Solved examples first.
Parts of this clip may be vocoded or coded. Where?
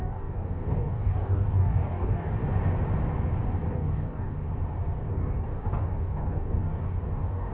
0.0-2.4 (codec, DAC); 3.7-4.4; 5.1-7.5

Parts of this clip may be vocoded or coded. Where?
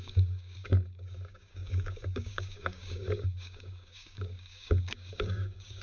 0.0-5.8 (codec, DAC)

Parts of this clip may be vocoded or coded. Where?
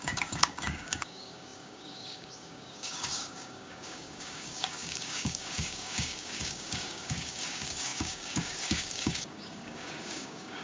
0.0-10.6 (codec, DAC)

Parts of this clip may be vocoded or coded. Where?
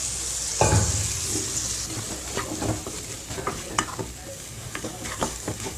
4.3-5.8 (codec, DAC)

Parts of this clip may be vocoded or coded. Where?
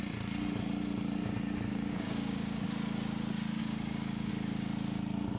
1.7-2.6 (codec, DAC); 3.6-4.3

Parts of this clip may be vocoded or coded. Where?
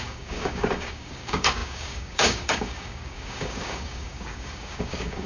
0.0-5.3 (codec, DAC)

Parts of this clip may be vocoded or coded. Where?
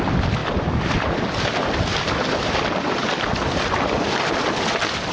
none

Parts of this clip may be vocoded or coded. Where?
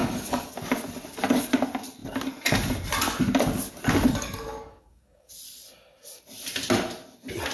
0.0-0.5 (codec, DAC); 4.1-5.3